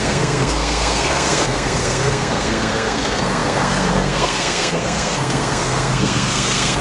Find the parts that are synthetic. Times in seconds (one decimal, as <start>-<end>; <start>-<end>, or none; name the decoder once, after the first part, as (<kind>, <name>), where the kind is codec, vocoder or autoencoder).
0.0-6.8 (codec, SNAC)